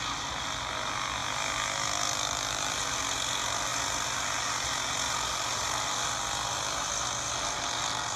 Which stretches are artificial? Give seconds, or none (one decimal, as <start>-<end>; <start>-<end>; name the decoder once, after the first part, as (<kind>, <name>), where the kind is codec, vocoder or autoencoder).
none